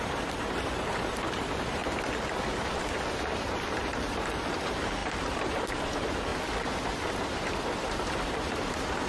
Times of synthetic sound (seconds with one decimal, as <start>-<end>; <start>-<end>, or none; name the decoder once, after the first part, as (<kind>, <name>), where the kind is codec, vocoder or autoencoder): 0.0-1.8 (vocoder, BigVGAN v2); 2.7-6.3; 7.1-9.1